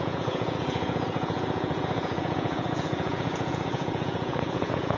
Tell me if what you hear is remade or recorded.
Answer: remade